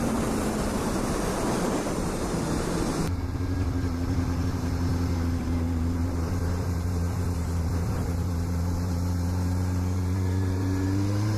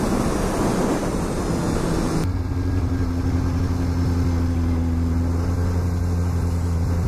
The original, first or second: second